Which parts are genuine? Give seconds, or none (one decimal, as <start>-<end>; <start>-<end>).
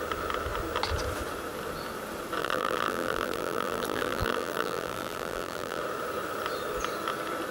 0.0-2.4; 5.8-7.5